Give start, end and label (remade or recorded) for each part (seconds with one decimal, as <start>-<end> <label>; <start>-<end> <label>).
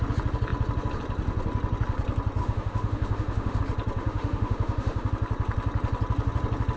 0.0-2.4 recorded; 2.4-3.6 remade; 3.6-4.0 recorded; 4.0-5.1 remade; 5.1-6.8 recorded